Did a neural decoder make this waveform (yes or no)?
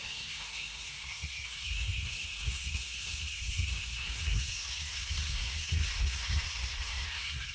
yes